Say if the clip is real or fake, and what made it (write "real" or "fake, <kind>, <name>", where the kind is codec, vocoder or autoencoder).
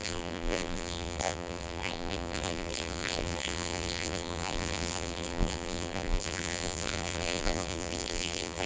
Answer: fake, vocoder, BigVGAN v2